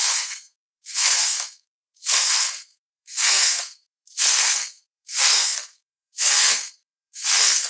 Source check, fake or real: fake